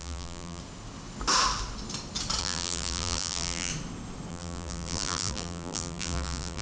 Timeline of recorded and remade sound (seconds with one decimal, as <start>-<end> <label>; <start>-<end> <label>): 0.0-0.6 remade; 0.6-2.4 recorded; 2.4-3.7 remade; 3.7-4.3 recorded; 4.3-6.6 remade